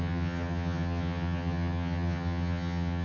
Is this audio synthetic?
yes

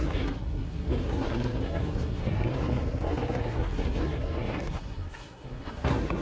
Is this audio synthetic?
yes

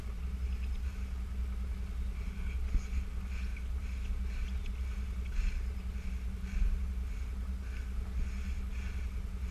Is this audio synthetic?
no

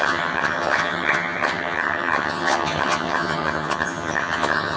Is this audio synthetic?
yes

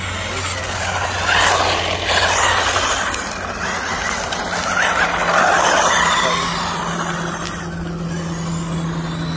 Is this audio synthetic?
no